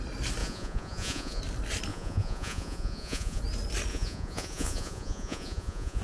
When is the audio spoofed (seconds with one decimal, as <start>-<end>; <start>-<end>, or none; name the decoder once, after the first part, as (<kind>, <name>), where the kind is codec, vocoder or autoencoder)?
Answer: 0.4-1.4 (vocoder, Vocos); 1.9-3.4; 3.9-6.0